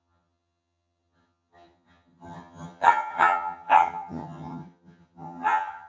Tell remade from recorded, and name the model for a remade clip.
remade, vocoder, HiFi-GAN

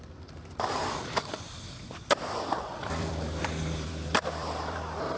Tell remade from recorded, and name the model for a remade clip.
remade, vocoder, BigVGAN v2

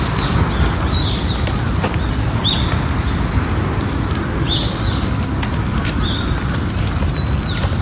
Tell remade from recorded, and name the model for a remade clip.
recorded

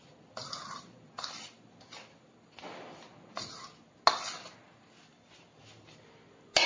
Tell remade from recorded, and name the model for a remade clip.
recorded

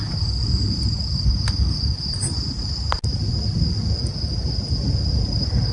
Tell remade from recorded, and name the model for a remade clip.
recorded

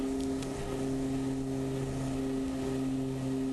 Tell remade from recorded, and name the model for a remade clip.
recorded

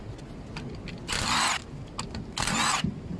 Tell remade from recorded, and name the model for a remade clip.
recorded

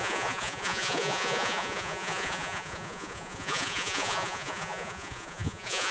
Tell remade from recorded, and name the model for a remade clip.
remade, vocoder, Vocos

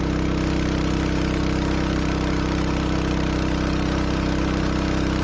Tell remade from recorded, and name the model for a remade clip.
remade, vocoder, BigVGAN v2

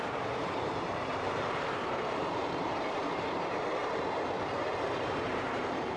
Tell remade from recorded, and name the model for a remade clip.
remade, vocoder, BigVGAN v2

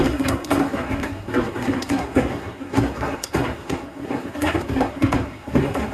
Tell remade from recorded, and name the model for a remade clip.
remade, codec, SNAC